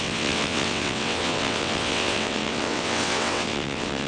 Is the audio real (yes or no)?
no